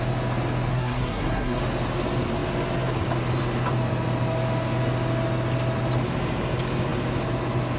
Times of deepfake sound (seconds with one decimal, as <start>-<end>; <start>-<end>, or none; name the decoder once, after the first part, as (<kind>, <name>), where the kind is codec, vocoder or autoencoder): 0.7-1.6 (codec, SNAC)

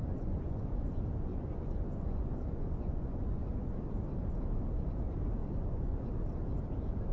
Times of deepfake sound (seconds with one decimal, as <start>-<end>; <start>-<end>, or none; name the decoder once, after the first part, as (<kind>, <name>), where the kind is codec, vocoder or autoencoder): 0.0-0.9 (vocoder, Vocos); 1.3-3.7; 5.4-6.1